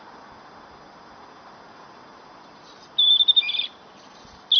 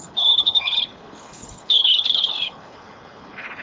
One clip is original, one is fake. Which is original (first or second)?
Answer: first